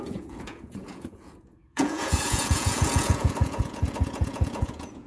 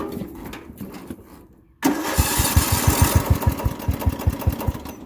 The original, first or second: second